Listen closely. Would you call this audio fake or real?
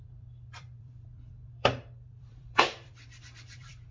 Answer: fake